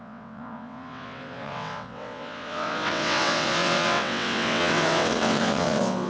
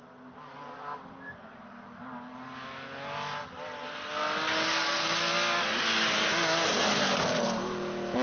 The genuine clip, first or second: second